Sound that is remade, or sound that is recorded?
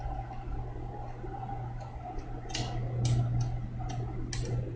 recorded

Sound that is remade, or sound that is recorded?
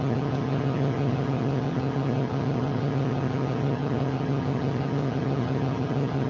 remade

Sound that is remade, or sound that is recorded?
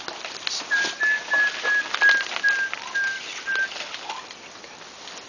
recorded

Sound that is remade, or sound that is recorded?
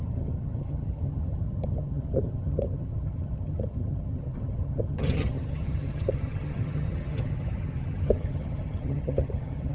remade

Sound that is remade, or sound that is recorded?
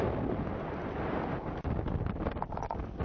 recorded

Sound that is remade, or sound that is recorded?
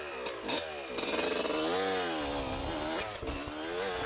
recorded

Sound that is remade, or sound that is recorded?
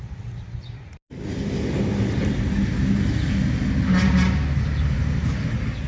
recorded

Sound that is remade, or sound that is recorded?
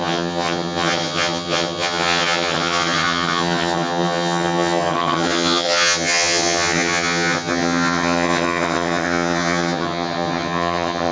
remade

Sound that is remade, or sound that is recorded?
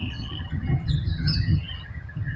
remade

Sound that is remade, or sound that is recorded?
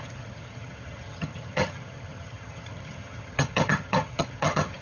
remade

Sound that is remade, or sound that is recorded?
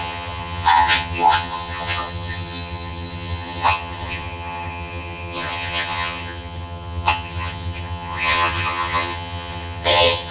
remade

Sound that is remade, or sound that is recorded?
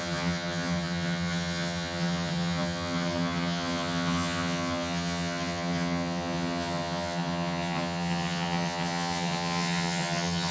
remade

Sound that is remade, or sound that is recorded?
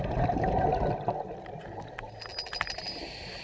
recorded